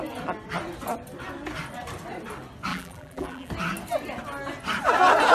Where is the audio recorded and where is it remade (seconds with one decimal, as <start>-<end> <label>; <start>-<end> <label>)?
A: 0.0-2.7 recorded; 2.7-3.5 remade; 3.5-5.3 recorded